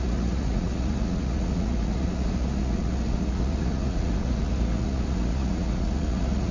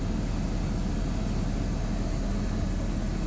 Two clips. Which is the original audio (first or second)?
second